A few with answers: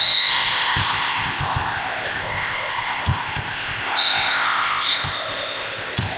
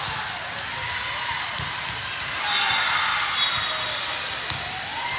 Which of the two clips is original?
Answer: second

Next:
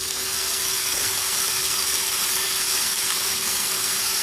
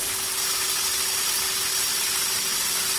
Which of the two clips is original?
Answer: second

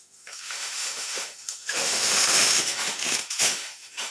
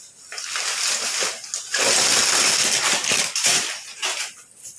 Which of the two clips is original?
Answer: second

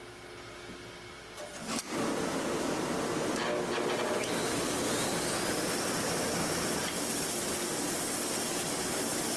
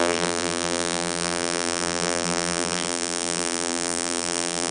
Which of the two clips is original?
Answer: first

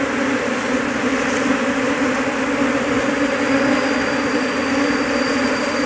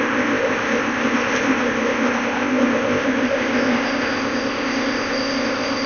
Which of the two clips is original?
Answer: first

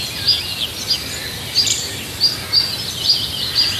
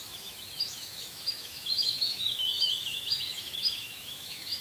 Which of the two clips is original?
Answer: first